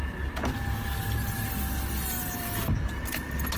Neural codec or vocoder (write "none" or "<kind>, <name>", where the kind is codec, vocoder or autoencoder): none